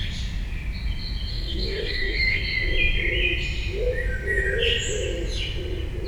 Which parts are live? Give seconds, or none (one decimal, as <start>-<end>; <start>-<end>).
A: 0.0-1.3; 2.4-6.1